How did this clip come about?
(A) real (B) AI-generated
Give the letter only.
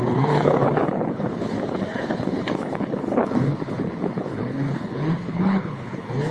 B